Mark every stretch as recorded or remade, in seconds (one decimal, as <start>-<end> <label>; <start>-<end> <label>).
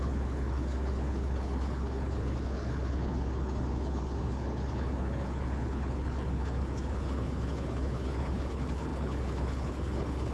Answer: 0.0-10.3 remade